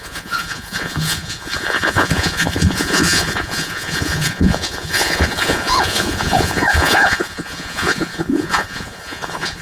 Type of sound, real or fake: fake